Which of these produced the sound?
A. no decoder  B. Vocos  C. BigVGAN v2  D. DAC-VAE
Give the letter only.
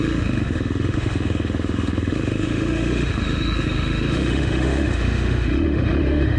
D